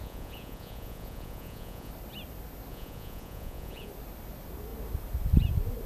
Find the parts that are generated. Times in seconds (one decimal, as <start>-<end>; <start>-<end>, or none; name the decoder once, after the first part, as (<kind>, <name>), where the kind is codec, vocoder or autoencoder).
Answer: 0.0-1.9 (vocoder, Vocos); 2.7-3.9